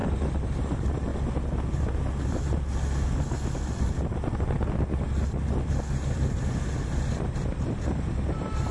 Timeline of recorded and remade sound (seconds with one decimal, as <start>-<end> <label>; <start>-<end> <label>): 0.0-1.1 remade; 1.1-6.1 recorded; 6.1-8.7 remade